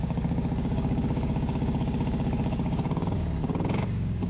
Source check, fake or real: fake